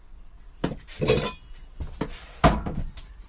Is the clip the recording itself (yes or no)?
yes